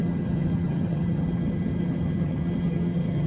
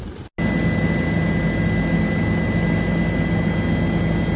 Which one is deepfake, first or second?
first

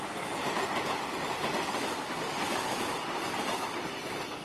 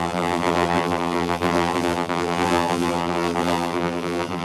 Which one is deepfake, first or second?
second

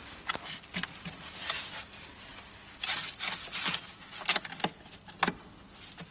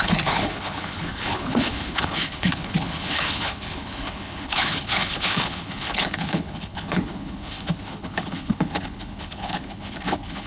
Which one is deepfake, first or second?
second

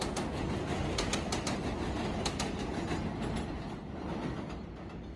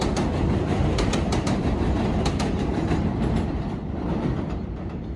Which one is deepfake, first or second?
second